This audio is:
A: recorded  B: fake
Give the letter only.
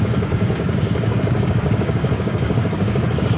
B